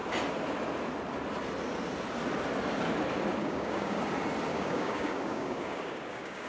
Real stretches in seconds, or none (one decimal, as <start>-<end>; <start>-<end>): 0.0-3.4; 4.0-4.5